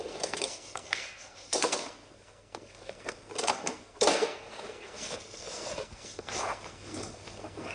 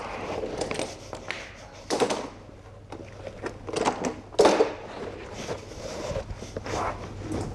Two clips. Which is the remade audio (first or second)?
first